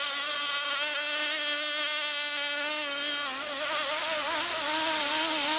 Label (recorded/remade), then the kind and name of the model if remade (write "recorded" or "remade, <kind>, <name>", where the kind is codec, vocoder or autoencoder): recorded